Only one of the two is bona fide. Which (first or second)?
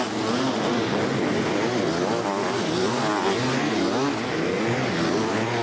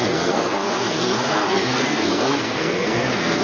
first